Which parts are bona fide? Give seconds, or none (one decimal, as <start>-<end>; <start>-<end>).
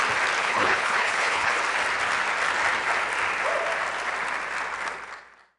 0.0-0.4; 1.5-5.6